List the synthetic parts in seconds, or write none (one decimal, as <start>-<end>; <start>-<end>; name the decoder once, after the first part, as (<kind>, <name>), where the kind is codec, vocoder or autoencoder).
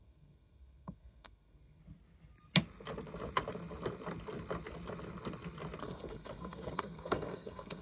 0.0-1.8 (codec, SNAC); 5.8-7.8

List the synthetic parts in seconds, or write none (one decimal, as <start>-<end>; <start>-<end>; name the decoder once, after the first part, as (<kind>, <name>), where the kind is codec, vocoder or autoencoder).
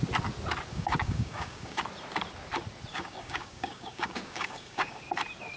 0.7-1.8 (codec, DAC); 2.9-5.0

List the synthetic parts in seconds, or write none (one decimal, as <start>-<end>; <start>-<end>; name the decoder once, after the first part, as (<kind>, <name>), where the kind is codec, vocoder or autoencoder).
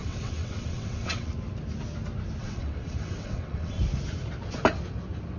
0.0-1.3 (vocoder, WaveNeXt); 2.4-3.8